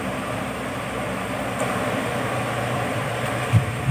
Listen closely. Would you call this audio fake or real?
real